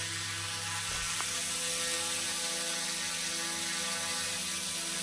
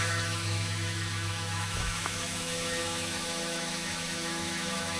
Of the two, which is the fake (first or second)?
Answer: second